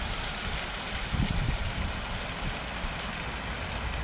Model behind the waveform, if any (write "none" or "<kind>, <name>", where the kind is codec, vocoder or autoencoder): none